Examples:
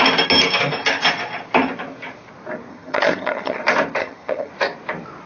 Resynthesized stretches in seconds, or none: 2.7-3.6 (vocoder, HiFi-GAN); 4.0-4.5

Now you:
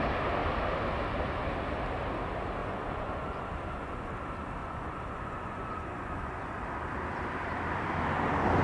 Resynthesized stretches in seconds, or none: 2.6-4.1 (vocoder, Vocos); 4.6-6.6

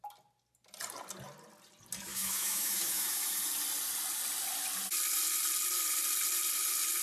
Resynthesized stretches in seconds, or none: 2.1-3.4 (autoencoder, DAC-VAE)

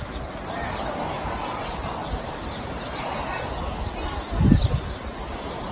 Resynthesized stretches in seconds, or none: none